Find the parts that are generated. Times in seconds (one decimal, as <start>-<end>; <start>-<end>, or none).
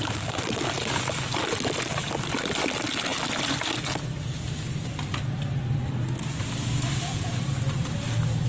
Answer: none